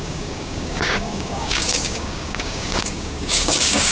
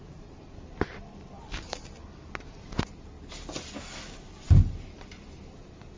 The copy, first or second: first